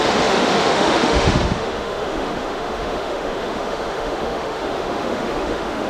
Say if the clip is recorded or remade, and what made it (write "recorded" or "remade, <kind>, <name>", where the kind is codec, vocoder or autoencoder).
remade, autoencoder, DAC-VAE